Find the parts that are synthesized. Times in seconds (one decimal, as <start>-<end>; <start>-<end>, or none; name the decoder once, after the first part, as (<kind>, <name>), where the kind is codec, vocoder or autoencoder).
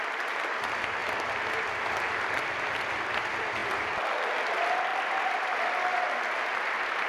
1.0-2.5 (vocoder, BigVGAN v2); 4.9-5.6